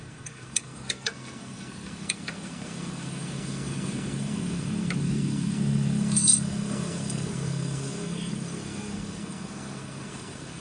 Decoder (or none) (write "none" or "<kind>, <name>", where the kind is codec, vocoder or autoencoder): codec, SNAC